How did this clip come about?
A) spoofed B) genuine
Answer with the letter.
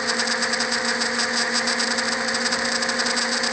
B